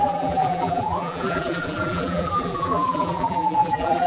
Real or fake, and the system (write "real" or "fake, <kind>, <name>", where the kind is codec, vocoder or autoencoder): fake, vocoder, BigVGAN v2